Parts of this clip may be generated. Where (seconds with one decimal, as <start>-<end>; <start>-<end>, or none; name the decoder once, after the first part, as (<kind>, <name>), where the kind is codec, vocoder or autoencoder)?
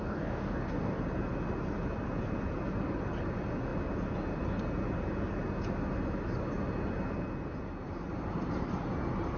0.0-1.0 (codec, DAC)